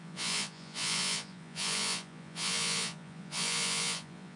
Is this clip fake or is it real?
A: fake